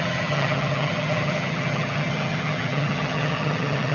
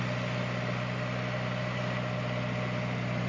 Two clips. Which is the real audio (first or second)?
second